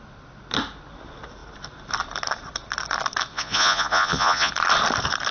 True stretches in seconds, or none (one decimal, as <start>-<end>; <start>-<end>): 0.0-3.3; 4.5-5.3